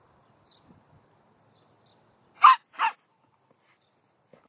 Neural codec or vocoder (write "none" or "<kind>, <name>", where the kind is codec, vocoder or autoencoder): none